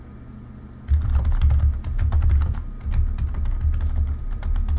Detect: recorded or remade recorded